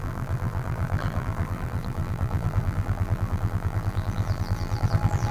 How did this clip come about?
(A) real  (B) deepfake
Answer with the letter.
B